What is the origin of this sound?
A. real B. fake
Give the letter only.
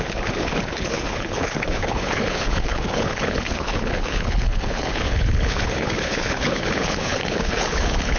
B